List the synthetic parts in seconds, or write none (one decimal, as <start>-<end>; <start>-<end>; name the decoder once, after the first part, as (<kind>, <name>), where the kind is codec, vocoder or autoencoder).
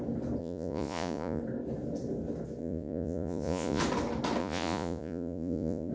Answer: 0.4-1.4 (vocoder, Vocos); 2.6-3.8; 4.4-5.9